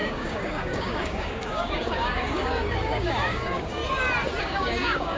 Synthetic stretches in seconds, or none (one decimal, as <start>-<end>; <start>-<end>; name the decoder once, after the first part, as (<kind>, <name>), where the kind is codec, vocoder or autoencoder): 0.0-3.8 (codec, DAC); 4.4-5.2